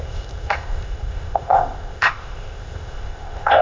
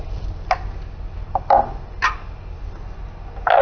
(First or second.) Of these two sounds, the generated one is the first